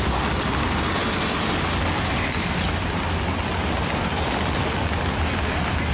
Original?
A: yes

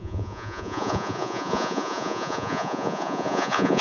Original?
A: no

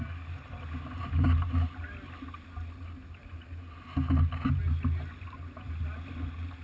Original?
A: yes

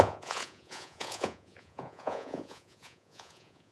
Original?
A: no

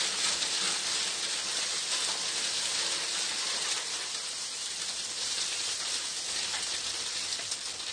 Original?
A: yes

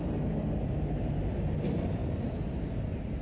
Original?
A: yes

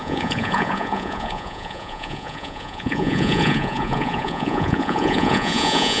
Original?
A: no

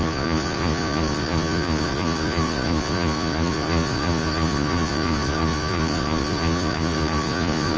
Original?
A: no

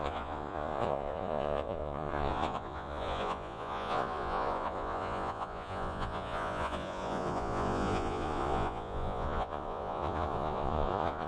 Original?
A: no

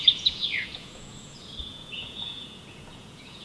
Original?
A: no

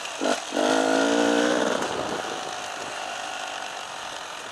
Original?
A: yes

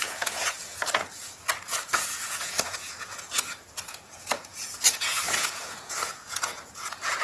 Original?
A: no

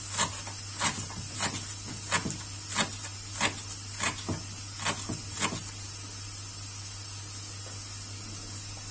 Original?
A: yes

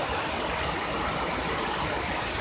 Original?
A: yes